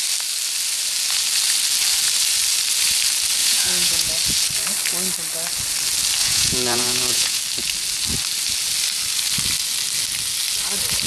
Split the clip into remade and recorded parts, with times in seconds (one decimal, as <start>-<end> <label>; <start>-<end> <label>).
0.0-3.4 recorded; 3.4-4.1 remade; 4.1-6.2 recorded; 6.2-7.4 remade; 7.4-11.1 recorded